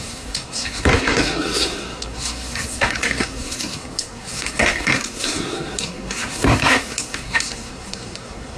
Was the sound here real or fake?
fake